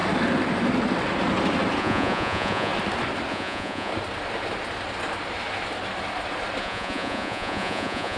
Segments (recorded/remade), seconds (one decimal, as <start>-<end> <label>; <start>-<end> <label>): 0.0-1.8 recorded; 1.8-2.7 remade; 2.7-3.3 recorded; 3.3-3.9 remade; 3.9-6.6 recorded; 6.6-8.2 remade